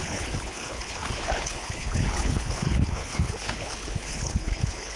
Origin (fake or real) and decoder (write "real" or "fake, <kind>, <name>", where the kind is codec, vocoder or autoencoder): fake, codec, HILCodec